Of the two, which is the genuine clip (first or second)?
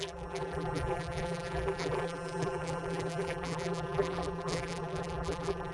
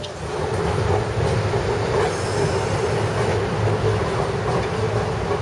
second